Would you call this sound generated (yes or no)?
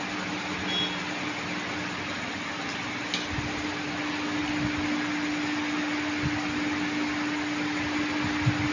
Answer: no